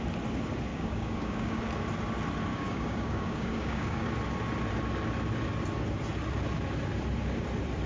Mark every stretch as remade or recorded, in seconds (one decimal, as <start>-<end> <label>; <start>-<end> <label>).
0.0-0.7 recorded; 0.7-1.6 remade; 1.6-2.5 recorded; 2.5-4.1 remade; 4.1-7.9 recorded